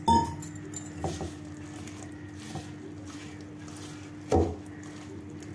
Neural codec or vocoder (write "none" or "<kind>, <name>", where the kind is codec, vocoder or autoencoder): none